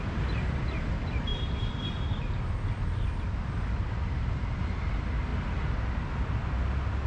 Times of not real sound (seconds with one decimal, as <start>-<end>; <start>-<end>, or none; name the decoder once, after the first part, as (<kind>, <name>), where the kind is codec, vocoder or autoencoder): 1.3-2.6 (vocoder, BigVGAN v2)